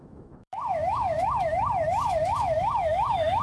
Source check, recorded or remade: remade